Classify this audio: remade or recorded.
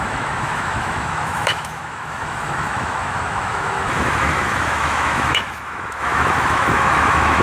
remade